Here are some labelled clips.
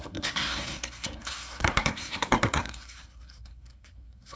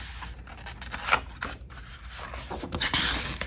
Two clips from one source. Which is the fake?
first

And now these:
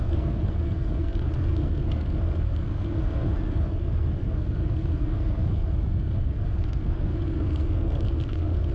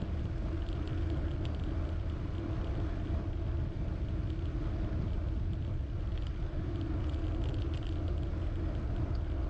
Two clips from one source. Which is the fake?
first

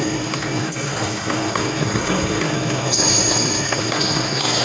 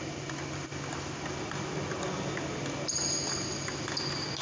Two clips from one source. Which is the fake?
first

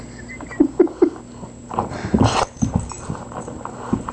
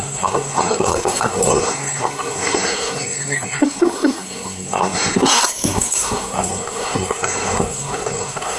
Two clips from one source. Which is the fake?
second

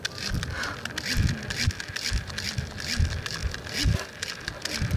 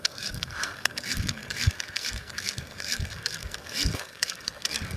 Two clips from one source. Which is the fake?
second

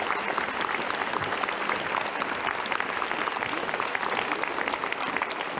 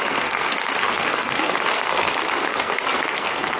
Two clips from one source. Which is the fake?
second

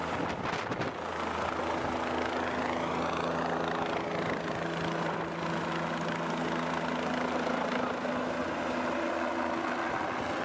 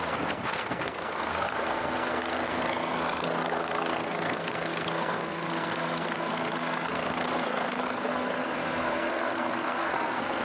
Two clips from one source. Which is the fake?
second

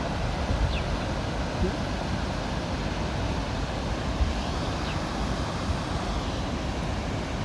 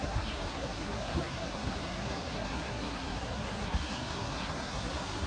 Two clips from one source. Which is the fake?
second